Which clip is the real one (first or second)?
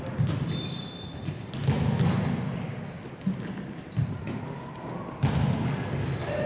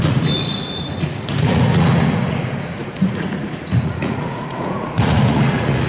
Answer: first